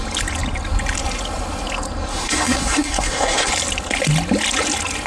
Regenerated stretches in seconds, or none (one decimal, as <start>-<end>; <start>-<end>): 2.1-3.5